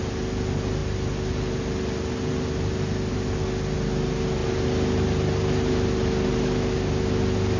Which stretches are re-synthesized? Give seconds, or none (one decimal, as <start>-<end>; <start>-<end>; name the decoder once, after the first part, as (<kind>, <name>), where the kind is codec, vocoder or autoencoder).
none